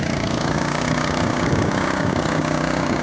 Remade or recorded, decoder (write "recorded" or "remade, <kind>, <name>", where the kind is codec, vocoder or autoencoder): remade, codec, DAC